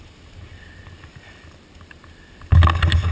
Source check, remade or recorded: recorded